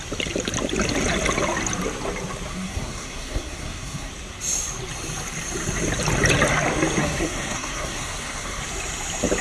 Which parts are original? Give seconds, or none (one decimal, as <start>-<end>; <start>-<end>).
0.0-2.5; 4.1-7.0; 8.6-9.4